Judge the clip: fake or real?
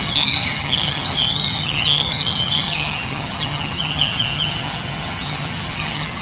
fake